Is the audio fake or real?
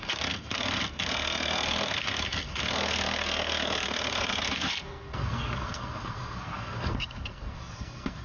fake